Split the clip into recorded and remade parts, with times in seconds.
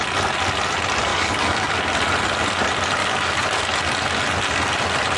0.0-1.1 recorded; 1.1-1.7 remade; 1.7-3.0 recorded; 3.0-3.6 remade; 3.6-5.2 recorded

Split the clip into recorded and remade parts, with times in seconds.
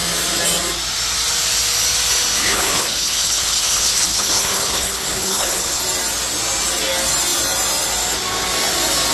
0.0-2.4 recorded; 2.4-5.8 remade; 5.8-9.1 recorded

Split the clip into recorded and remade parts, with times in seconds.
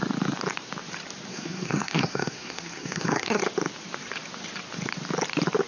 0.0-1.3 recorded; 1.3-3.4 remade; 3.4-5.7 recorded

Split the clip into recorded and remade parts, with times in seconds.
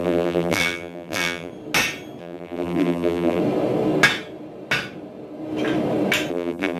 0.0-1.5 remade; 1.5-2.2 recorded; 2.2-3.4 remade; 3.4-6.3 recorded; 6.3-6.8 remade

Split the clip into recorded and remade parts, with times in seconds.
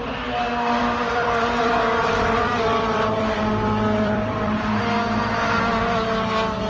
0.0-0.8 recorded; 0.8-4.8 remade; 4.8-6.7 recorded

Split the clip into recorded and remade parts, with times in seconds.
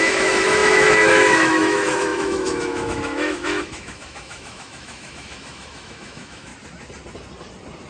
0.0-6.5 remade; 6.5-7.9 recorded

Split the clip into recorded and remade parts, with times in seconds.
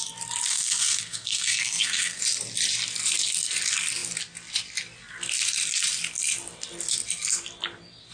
0.0-0.5 recorded; 0.5-2.2 remade; 2.2-8.1 recorded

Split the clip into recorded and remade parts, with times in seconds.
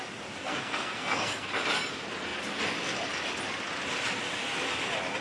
0.0-0.4 recorded; 0.4-1.5 remade; 1.5-5.2 recorded